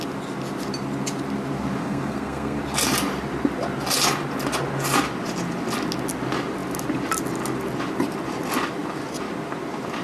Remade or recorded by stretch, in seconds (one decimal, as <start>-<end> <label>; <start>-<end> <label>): 0.0-1.8 recorded; 1.8-2.6 remade; 2.6-10.0 recorded